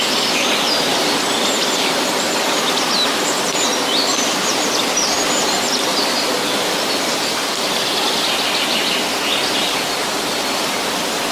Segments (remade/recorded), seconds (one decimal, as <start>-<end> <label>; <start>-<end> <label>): 0.0-0.9 recorded; 0.9-2.0 remade; 2.0-4.1 recorded; 4.1-8.3 remade; 8.3-11.3 recorded